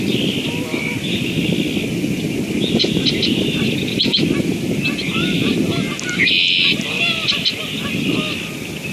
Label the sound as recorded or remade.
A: recorded